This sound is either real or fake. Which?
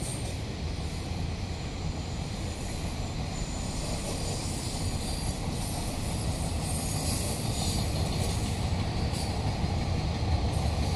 real